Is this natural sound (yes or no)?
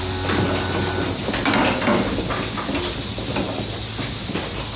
yes